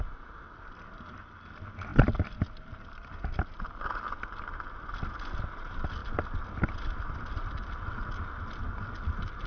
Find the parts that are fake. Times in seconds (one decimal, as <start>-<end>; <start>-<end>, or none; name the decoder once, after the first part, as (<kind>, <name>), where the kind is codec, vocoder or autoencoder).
none

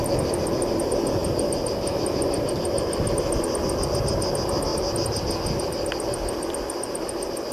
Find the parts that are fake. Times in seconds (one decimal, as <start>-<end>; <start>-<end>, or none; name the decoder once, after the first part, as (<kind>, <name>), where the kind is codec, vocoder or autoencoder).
none

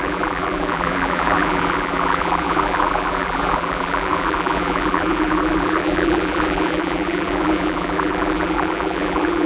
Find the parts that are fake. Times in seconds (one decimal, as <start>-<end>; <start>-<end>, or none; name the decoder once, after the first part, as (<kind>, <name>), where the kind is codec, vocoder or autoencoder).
0.0-9.5 (vocoder, BigVGAN v2)

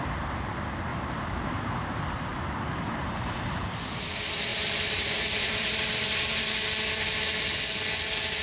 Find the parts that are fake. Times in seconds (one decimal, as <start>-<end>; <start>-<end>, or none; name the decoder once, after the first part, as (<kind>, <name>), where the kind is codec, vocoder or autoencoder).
0.9-1.8 (vocoder, BigVGAN v2); 2.3-3.6; 4.5-6.4

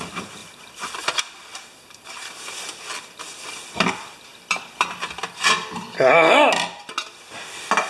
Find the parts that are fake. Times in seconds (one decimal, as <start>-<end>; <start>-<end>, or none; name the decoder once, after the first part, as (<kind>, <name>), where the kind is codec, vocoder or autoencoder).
4.3-5.2 (vocoder, BigVGAN v2)

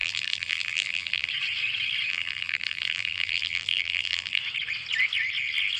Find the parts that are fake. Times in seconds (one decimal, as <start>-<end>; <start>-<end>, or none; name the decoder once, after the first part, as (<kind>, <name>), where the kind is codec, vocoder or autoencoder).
0.0-1.3 (vocoder, BigVGAN v2); 2.1-4.4